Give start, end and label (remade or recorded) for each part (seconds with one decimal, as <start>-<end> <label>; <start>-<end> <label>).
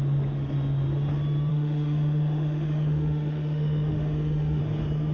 0.0-1.5 recorded; 1.5-4.6 remade; 4.6-5.1 recorded